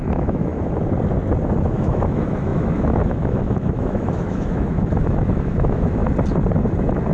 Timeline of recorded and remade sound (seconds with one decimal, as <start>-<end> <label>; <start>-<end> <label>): 0.0-0.5 remade; 0.5-1.6 recorded; 1.6-6.0 remade; 6.0-7.1 recorded